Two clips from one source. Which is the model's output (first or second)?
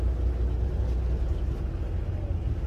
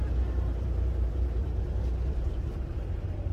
second